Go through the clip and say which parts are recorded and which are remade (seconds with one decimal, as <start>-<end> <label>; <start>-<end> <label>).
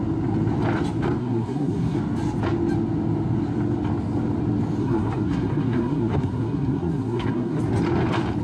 0.0-1.2 recorded; 1.2-2.0 remade; 2.0-4.8 recorded; 4.8-7.6 remade; 7.6-8.4 recorded